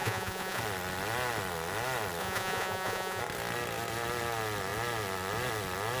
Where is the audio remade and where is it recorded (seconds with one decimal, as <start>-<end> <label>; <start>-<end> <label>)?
0.0-0.6 remade; 0.6-2.2 recorded; 2.2-3.2 remade; 3.2-6.0 recorded